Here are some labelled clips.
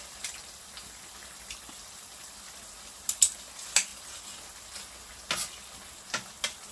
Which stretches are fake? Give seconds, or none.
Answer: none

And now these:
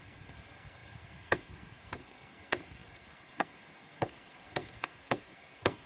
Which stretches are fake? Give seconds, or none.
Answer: 0.0-5.9 (codec, SNAC)